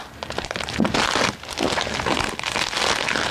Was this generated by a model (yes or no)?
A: no